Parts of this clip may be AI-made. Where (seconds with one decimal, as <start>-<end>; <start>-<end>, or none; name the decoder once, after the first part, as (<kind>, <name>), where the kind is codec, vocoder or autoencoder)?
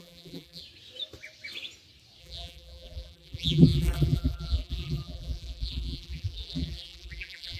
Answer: 0.0-0.6 (vocoder, BigVGAN v2); 2.2-7.6